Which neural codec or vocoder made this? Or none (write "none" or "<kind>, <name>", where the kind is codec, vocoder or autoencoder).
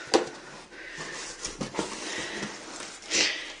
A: none